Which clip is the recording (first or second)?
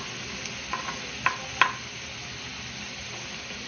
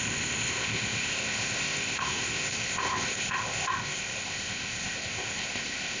first